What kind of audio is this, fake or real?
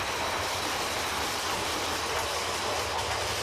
real